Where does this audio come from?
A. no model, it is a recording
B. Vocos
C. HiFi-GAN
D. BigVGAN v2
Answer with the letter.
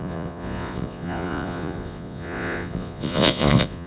B